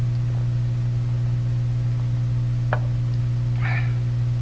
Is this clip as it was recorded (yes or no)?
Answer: yes